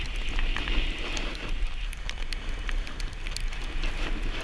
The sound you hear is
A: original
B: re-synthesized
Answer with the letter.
A